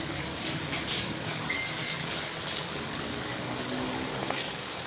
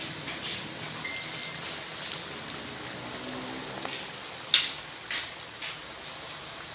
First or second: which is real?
second